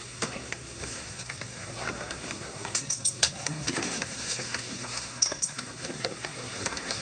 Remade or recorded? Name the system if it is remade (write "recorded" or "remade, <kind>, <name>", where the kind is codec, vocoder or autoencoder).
remade, codec, SNAC